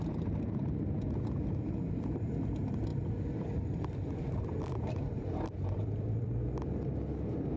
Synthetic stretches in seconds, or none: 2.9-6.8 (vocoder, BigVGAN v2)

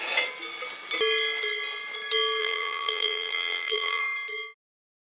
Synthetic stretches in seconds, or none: 2.4-4.0 (vocoder, BigVGAN v2)

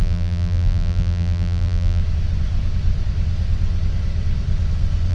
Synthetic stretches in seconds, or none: 0.0-2.0 (vocoder, BigVGAN v2)

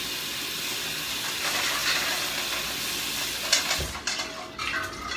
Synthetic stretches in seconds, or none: none

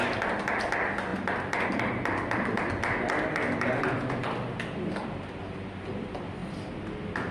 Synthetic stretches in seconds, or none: none

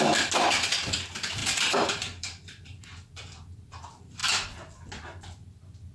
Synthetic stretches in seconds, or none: 1.4-2.8 (vocoder, BigVGAN v2)